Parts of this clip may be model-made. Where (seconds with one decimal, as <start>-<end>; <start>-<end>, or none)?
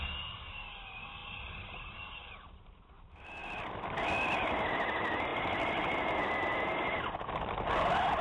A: none